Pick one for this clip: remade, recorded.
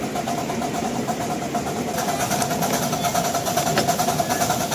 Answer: recorded